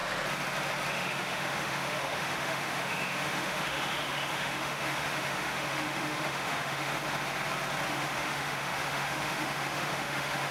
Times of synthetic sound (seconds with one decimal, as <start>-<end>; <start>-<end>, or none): 0.9-6.9; 7.9-10.5